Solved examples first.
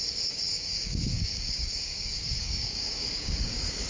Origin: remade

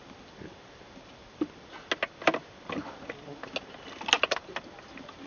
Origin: recorded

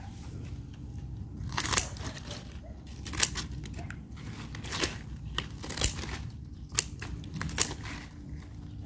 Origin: recorded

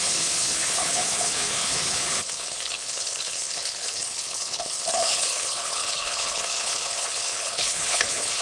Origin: remade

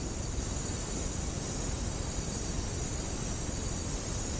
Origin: recorded